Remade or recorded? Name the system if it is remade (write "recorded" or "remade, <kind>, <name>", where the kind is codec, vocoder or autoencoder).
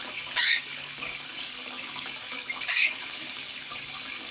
remade, codec, DAC